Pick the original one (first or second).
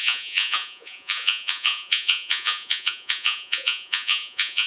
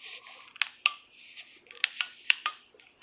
second